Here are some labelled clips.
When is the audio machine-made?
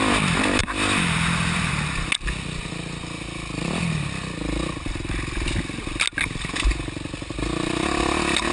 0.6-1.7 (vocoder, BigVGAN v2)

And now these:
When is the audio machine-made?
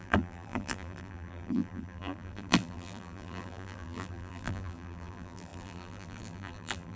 0.0-7.0 (vocoder, BigVGAN v2)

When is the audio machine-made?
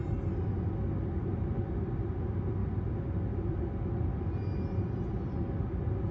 none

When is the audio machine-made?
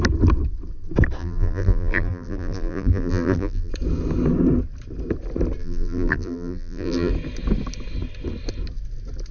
1.2-3.7 (vocoder, BigVGAN v2); 5.6-7.1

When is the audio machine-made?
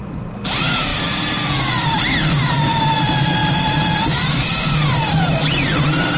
0.0-6.2 (vocoder, BigVGAN v2)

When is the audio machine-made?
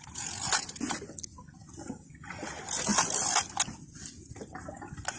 none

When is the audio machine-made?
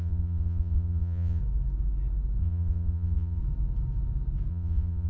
0.0-1.4 (vocoder, Vocos); 2.4-3.4; 4.5-5.1